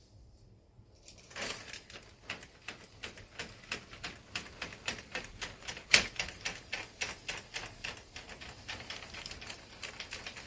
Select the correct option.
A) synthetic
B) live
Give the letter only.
B